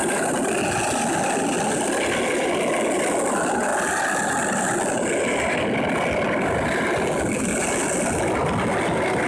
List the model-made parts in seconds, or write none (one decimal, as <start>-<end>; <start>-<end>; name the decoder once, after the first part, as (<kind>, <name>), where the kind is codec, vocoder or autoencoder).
none